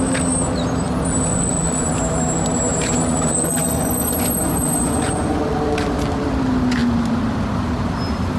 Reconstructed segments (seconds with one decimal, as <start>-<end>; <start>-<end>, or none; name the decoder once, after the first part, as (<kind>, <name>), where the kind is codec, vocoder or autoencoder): 1.3-1.9 (vocoder, Vocos); 3.1-5.4